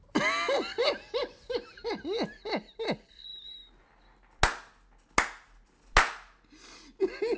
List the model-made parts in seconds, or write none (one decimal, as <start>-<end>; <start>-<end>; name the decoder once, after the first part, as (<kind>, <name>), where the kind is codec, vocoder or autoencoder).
none

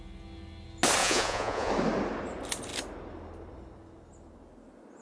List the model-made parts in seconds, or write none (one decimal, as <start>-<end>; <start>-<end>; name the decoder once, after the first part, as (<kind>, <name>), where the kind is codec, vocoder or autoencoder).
1.0-1.7 (vocoder, Vocos)

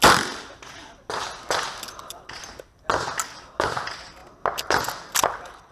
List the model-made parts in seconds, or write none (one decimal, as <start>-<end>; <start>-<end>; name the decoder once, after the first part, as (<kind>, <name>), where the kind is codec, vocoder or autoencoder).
none

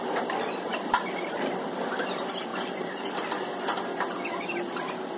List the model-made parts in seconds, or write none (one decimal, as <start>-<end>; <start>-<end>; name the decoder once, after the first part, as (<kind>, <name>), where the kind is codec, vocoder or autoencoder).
0.7-2.1 (vocoder, BigVGAN v2)

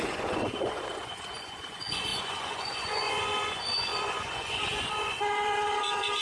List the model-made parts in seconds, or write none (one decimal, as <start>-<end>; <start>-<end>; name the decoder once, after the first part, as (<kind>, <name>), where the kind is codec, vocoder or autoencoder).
0.0-6.2 (vocoder, Vocos)